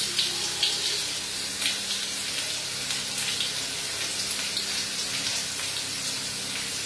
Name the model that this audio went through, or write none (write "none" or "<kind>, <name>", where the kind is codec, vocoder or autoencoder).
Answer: none